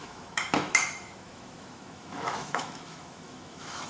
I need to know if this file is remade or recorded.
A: remade